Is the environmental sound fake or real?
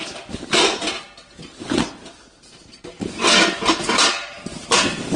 real